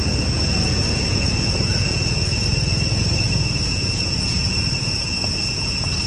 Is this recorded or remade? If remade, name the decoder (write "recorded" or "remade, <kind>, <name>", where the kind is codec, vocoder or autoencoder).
remade, vocoder, Vocos